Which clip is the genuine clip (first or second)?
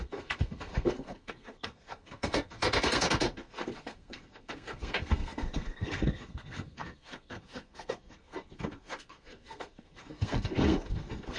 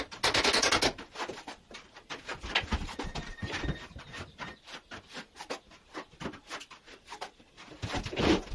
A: second